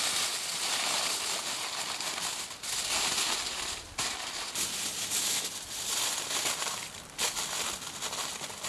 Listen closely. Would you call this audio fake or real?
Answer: real